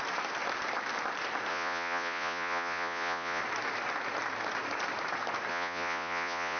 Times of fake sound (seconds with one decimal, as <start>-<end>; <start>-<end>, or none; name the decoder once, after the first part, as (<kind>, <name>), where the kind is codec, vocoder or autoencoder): 1.5-3.4 (vocoder, Vocos); 5.5-6.6